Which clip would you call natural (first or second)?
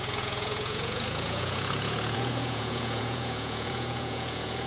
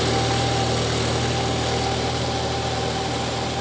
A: second